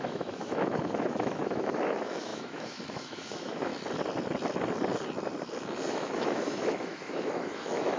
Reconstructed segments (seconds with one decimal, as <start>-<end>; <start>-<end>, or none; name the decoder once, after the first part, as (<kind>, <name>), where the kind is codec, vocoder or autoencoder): 0.0-3.7 (autoencoder, DAC-VAE); 5.9-8.0